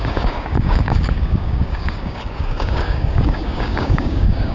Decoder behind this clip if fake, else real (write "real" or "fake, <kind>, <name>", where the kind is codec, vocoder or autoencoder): fake, codec, DAC